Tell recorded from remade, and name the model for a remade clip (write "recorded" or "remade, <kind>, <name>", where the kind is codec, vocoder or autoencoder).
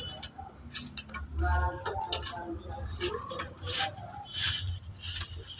recorded